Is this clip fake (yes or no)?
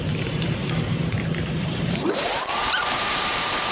yes